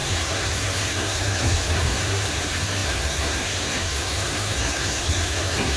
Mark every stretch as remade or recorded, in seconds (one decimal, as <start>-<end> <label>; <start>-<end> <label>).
0.0-5.8 remade